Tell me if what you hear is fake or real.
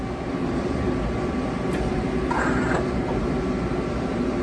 real